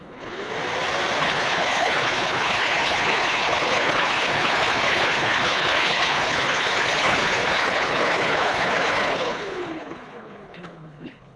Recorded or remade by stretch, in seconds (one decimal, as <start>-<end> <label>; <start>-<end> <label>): 0.0-0.5 remade; 0.5-1.2 recorded; 1.2-11.4 remade